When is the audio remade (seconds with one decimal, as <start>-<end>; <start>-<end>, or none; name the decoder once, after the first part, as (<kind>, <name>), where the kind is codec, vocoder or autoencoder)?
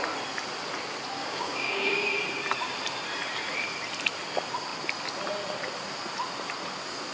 1.2-2.2 (codec, DAC)